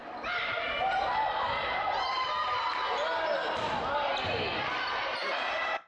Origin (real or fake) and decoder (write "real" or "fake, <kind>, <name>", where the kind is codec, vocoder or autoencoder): real